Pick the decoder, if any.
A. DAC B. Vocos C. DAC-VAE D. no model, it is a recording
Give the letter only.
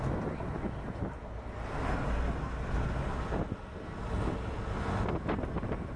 D